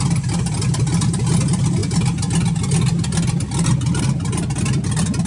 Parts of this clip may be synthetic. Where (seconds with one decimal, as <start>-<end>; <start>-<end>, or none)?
none